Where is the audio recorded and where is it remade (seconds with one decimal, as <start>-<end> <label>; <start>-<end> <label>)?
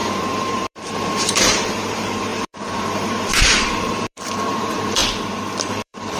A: 0.0-5.0 remade; 5.0-5.7 recorded; 5.7-6.2 remade